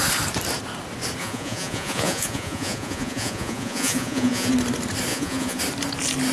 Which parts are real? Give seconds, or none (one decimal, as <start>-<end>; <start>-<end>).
0.0-1.2; 4.5-5.1; 5.6-6.3

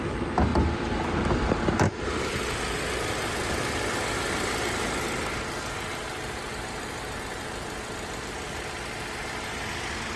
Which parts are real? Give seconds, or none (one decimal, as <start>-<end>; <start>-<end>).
0.0-10.2

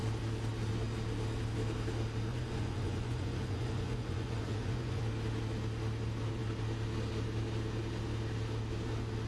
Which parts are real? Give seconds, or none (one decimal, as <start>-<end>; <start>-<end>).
0.0-2.3; 5.0-9.3

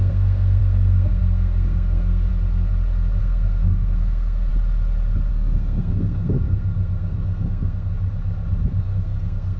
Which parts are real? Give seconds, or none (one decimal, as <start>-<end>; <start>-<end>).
2.3-3.2; 4.5-5.3; 7.9-8.8

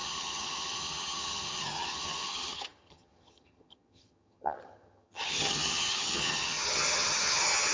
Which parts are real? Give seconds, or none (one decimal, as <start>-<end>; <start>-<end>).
none

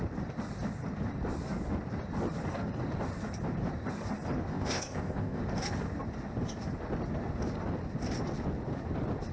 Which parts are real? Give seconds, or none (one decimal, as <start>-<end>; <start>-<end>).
0.0-4.5; 5.4-9.3